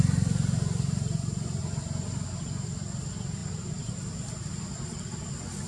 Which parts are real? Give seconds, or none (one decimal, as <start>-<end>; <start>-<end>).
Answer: 0.0-5.7